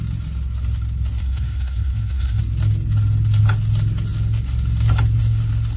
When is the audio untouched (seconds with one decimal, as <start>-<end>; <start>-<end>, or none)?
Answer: 0.0-1.2; 2.4-5.8